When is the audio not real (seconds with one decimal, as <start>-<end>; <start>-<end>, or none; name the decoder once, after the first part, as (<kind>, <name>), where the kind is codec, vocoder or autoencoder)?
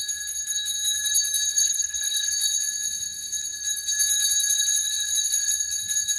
1.5-2.3 (codec, HILCodec)